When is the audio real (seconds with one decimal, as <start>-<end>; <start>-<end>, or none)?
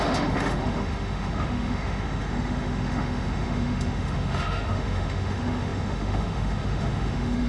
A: none